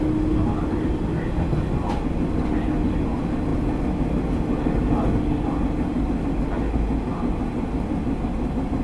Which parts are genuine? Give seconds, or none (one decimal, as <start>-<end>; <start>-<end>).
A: 0.0-8.8